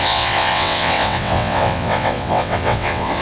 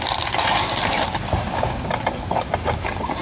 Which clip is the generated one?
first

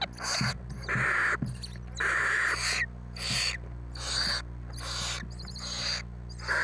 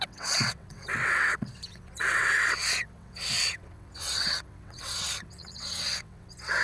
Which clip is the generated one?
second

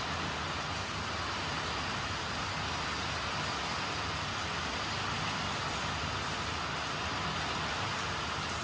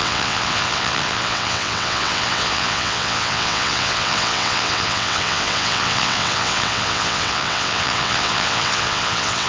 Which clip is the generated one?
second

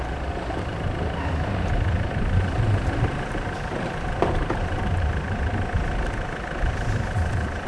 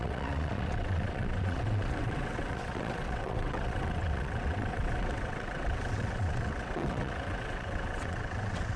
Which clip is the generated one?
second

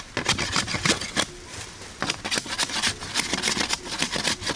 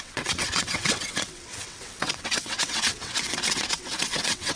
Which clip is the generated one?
second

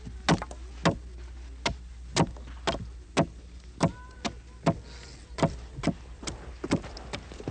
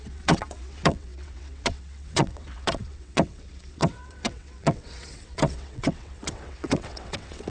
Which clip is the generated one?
second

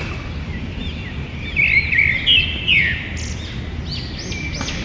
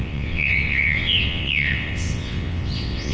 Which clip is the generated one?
second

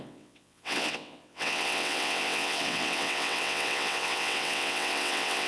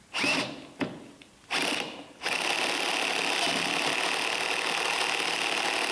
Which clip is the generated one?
first